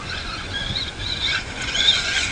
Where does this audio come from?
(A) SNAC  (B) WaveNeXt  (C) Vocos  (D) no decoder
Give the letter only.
C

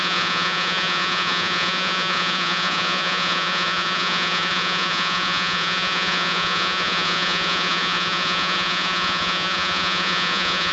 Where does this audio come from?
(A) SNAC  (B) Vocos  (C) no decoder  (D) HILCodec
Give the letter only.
B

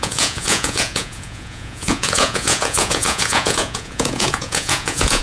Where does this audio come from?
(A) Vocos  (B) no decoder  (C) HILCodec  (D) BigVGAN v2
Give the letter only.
A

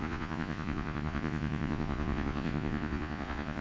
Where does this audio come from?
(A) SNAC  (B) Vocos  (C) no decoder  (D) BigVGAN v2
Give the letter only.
B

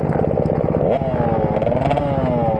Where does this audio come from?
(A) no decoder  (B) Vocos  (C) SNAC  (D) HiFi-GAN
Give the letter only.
A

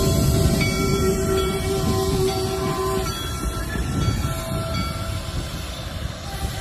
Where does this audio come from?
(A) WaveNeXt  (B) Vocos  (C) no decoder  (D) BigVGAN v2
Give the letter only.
C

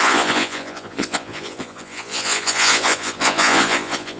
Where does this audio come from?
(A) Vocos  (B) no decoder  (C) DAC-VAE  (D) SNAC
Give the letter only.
A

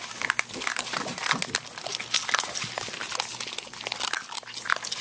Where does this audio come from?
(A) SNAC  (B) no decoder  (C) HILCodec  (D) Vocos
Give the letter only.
B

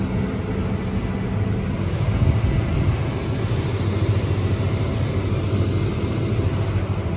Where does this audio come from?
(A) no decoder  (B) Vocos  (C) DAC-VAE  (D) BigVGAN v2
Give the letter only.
A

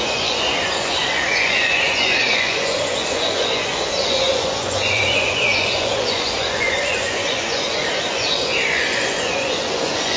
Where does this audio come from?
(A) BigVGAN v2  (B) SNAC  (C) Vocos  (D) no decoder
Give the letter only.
C